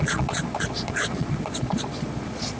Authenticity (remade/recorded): remade